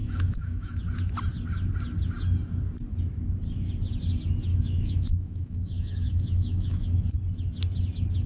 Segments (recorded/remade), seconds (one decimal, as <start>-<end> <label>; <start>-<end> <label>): 0.0-0.8 remade; 0.8-4.5 recorded; 4.5-7.0 remade; 7.0-8.3 recorded